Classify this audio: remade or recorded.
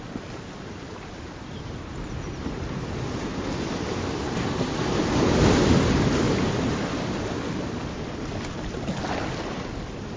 recorded